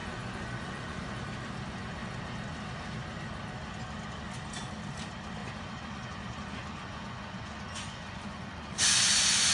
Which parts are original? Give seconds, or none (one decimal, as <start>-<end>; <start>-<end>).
1.2-5.4